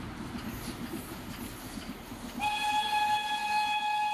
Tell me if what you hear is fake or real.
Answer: real